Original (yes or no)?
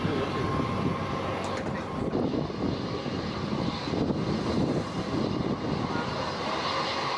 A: yes